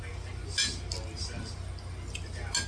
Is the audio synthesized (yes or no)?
no